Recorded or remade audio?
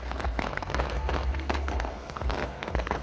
remade